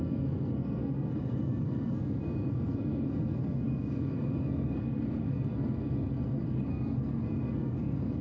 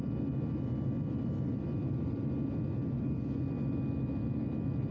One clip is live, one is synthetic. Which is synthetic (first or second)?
first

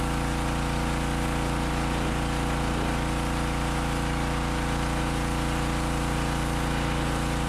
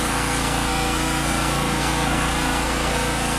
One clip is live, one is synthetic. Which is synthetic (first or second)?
second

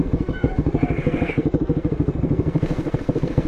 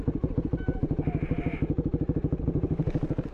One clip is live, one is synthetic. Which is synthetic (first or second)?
first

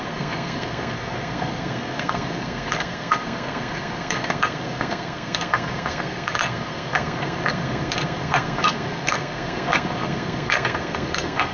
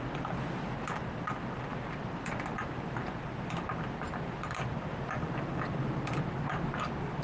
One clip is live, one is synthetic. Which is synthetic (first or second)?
first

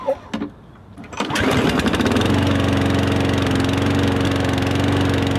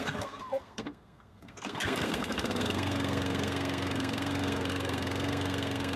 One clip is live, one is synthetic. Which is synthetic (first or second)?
second